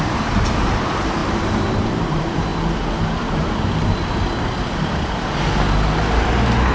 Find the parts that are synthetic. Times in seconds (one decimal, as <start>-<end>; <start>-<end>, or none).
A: 0.0-2.5; 3.2-4.0